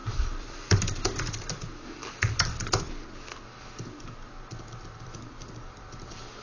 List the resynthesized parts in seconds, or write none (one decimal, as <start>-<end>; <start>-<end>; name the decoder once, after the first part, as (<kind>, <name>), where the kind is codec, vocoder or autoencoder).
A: 0.0-2.5 (vocoder, BigVGAN v2); 4.7-6.4